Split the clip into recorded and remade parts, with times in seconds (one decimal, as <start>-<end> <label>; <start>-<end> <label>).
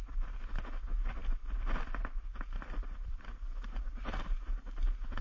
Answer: 0.0-1.2 recorded; 1.2-4.3 remade; 4.3-5.2 recorded